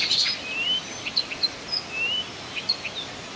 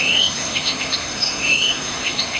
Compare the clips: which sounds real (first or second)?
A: first